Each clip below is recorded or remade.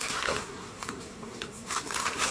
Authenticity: remade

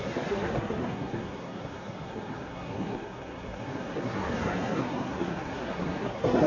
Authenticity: remade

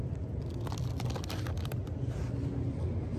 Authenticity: recorded